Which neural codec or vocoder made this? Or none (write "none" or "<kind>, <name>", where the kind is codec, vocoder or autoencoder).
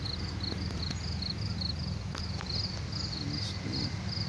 none